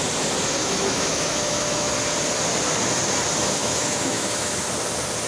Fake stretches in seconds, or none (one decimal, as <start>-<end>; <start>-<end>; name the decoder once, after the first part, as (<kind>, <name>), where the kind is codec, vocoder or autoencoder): 0.6-1.9 (autoencoder, DAC-VAE); 3.6-4.6